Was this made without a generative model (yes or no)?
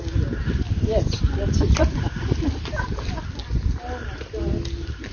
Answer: yes